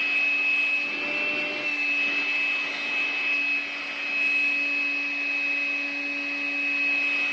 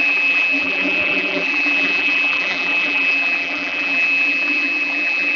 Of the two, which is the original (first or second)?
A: first